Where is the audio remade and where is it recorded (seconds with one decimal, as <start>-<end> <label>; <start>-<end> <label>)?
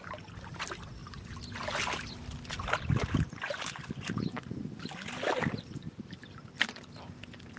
0.0-7.6 recorded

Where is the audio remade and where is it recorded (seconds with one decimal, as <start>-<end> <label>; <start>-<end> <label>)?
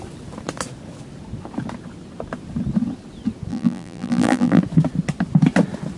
0.0-3.5 recorded; 3.5-4.6 remade; 4.6-6.0 recorded